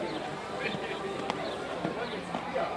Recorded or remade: recorded